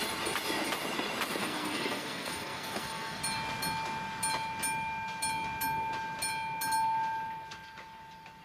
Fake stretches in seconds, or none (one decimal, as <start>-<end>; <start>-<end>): 1.4-3.2